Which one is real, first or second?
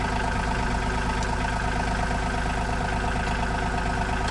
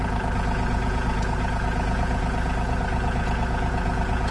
first